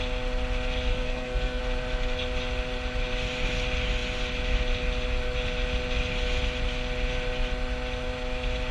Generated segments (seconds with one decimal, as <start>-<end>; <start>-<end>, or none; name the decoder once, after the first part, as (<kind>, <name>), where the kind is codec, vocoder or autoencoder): 0.9-1.6 (codec, SNAC)